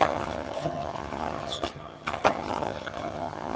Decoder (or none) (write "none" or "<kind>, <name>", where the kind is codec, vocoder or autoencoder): vocoder, HiFi-GAN